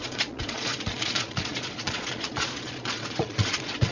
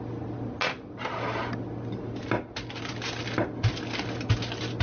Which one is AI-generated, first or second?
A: first